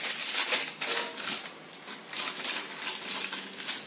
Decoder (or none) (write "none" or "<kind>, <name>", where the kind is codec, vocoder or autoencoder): none